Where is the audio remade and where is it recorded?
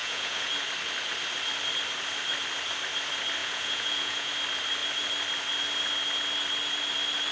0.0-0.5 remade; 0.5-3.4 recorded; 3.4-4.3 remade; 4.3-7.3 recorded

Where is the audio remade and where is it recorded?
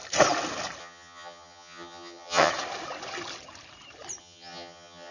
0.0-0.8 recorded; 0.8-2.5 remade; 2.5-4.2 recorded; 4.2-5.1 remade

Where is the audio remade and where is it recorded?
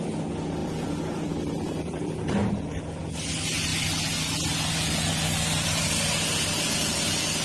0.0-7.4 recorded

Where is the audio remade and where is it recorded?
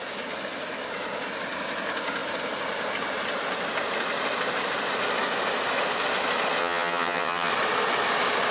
0.0-6.6 recorded; 6.6-7.5 remade; 7.5-8.5 recorded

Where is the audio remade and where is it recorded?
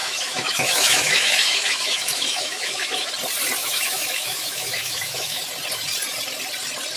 0.0-3.1 remade; 3.1-3.6 recorded; 3.6-5.4 remade; 5.4-7.0 recorded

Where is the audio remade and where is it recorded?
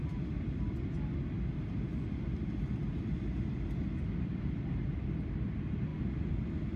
0.0-6.8 recorded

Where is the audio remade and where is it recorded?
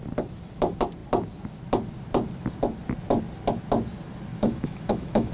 0.0-4.3 recorded; 4.3-5.3 remade